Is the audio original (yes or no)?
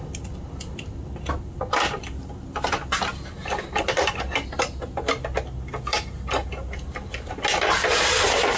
yes